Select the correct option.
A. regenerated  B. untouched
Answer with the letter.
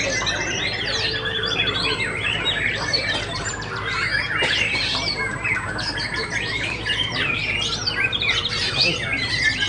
A